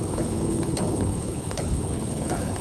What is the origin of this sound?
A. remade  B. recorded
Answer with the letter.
A